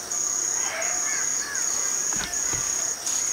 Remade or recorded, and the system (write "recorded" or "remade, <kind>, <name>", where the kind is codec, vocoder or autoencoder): recorded